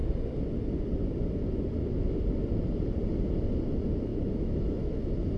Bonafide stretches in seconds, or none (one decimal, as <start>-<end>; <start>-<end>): 0.0-4.1; 5.0-5.4